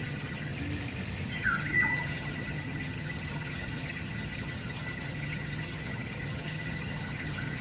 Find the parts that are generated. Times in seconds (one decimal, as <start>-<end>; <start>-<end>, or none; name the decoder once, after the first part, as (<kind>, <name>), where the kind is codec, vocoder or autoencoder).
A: 0.0-0.5 (vocoder, HiFi-GAN); 1.3-7.6